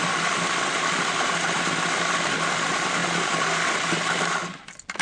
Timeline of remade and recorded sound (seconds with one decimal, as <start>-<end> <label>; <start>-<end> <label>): 0.0-5.0 recorded